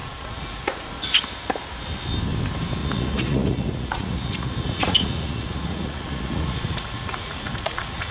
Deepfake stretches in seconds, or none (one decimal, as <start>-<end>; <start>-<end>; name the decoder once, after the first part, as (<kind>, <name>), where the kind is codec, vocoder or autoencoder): 0.0-0.8 (vocoder, Vocos); 2.8-8.1